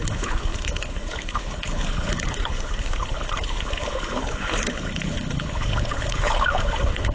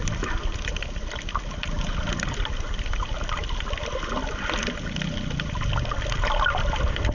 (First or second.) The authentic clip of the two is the second